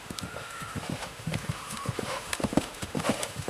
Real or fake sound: fake